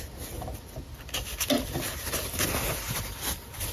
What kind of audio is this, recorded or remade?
recorded